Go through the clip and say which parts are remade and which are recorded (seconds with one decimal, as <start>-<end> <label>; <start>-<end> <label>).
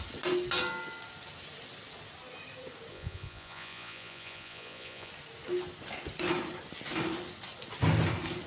0.0-2.9 recorded; 2.9-5.1 remade; 5.1-8.5 recorded